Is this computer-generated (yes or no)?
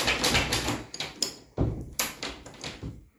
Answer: no